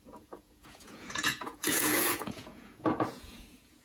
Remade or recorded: remade